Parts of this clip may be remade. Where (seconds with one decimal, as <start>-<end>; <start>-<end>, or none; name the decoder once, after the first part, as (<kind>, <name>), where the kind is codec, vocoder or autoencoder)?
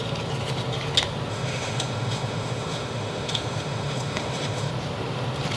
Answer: 1.3-4.7 (autoencoder, DAC-VAE)